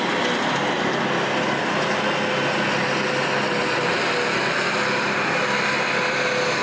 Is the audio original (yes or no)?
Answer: yes